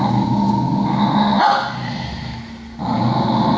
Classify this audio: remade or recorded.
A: recorded